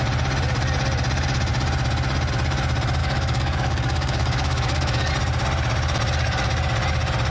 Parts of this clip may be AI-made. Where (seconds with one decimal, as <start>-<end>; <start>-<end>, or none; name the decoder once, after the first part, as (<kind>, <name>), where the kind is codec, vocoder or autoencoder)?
3.0-5.1 (codec, DAC)